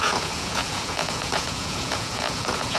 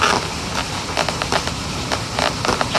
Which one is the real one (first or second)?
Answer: second